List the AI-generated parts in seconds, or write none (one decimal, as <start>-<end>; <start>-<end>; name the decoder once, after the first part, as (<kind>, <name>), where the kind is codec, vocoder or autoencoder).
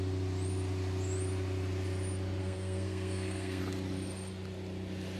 2.4-3.6 (codec, SNAC)